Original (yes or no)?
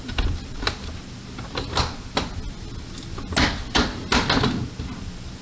yes